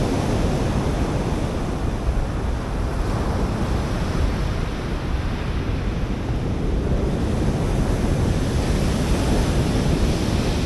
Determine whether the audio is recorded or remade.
recorded